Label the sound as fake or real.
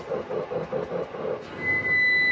real